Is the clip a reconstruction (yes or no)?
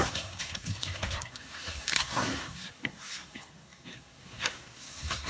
yes